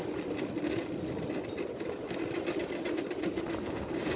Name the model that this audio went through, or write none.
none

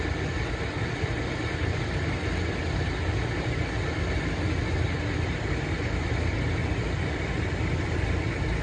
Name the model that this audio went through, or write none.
none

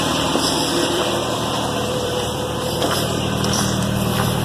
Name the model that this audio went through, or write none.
vocoder, BigVGAN v2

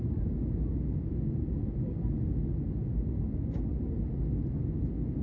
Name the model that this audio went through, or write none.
none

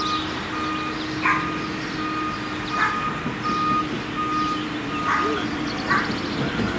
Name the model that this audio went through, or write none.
none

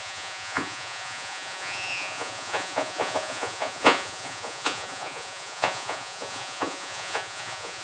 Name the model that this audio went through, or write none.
vocoder, Vocos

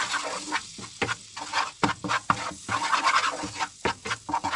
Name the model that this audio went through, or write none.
none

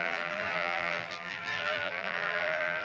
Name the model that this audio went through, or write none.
vocoder, BigVGAN v2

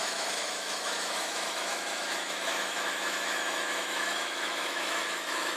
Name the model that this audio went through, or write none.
autoencoder, DAC-VAE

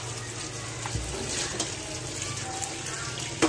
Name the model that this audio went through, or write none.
none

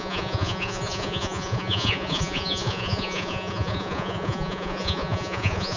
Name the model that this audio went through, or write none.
vocoder, Vocos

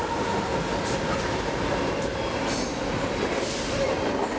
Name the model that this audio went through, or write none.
none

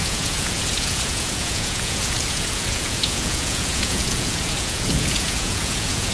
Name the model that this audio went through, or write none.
vocoder, Vocos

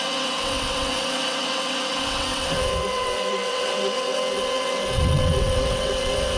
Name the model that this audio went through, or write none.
vocoder, WaveNeXt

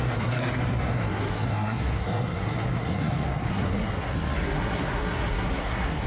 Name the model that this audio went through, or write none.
codec, SNAC